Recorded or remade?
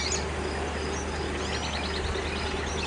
recorded